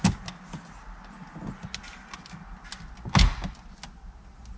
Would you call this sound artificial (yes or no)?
no